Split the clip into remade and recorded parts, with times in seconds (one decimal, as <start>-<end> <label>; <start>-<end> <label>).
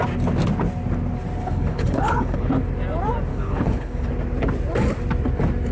0.0-1.4 recorded; 1.4-2.5 remade; 2.5-3.3 recorded; 3.3-4.1 remade; 4.1-5.7 recorded